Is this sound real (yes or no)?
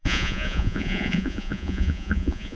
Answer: no